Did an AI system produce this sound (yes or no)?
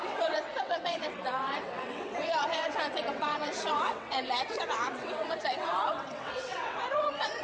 yes